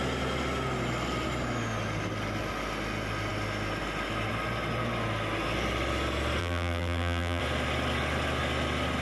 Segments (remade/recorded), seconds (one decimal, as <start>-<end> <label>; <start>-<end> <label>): 0.0-6.4 recorded; 6.4-7.4 remade; 7.4-9.0 recorded

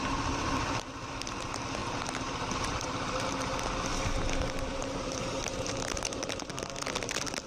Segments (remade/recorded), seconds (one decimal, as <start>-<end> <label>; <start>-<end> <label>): 0.0-1.8 recorded; 1.8-3.3 remade; 3.3-4.7 recorded; 4.7-6.5 remade; 6.5-7.5 recorded

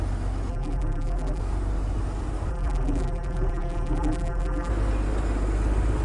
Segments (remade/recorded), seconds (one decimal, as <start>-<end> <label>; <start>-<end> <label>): 0.0-0.5 recorded; 0.5-1.4 remade; 1.4-2.5 recorded; 2.5-4.7 remade; 4.7-6.0 recorded

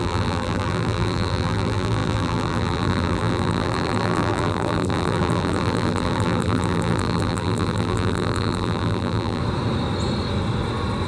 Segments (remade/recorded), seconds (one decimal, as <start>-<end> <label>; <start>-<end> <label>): 0.0-9.4 remade; 9.4-11.1 recorded